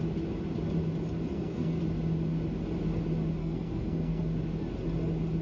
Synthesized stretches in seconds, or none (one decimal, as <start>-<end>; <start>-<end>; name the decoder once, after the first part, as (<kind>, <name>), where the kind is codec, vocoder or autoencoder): 1.3-1.8 (codec, SNAC); 3.4-4.2